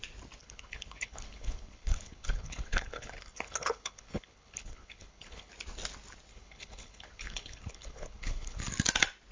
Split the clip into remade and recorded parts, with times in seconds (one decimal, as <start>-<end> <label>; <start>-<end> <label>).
0.0-0.4 recorded; 0.4-5.5 remade; 5.5-6.3 recorded; 6.3-8.6 remade; 8.6-9.3 recorded